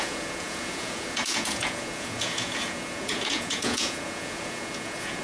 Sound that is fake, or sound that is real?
fake